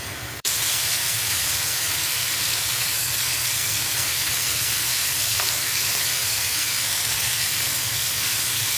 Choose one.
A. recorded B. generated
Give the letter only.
B